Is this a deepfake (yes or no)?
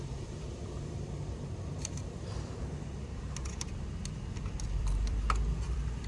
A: yes